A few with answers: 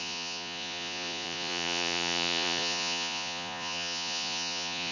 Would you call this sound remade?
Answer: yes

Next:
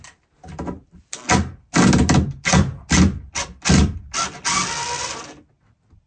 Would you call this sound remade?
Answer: no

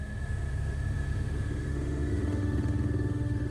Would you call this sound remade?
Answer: yes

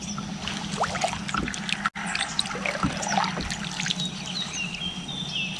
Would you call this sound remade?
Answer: no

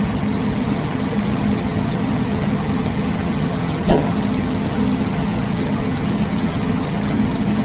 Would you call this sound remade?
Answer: yes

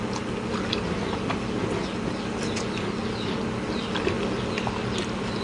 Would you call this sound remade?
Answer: no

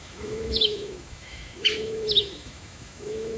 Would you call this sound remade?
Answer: yes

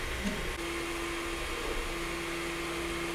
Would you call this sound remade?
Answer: no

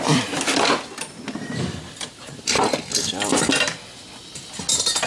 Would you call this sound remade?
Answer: no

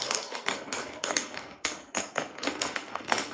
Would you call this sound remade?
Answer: yes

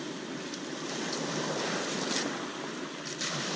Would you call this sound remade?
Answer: no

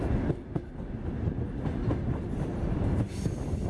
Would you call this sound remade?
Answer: no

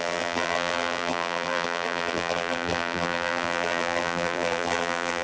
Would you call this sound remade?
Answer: yes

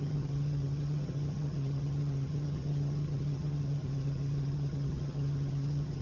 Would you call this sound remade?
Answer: yes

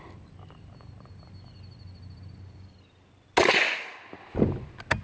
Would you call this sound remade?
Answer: no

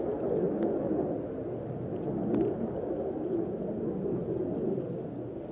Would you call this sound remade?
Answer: no